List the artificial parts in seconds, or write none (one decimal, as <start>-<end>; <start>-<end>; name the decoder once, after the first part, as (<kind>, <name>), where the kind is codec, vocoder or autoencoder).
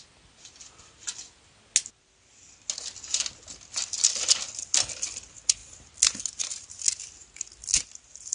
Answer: none